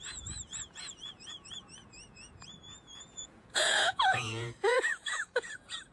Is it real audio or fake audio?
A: fake